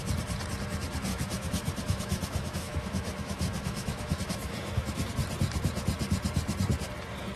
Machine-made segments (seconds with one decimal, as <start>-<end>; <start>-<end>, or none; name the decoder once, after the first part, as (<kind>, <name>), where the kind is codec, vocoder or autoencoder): 1.1-5.1 (autoencoder, DAC-VAE)